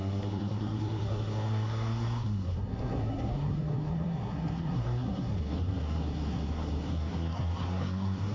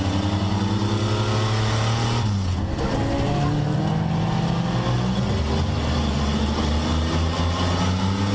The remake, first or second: first